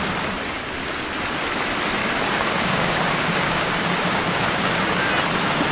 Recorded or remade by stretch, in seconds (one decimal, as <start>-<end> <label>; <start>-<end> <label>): 0.0-2.0 recorded; 2.0-5.1 remade; 5.1-5.7 recorded